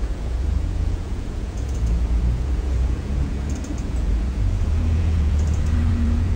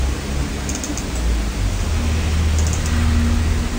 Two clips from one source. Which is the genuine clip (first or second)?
second